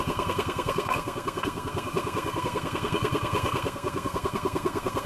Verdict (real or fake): fake